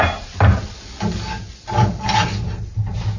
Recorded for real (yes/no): yes